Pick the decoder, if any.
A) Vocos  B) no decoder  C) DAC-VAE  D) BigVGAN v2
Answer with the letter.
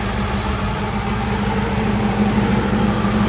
B